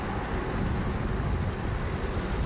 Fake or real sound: real